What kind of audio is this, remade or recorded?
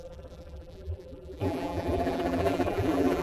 remade